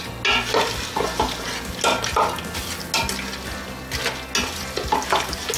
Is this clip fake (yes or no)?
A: no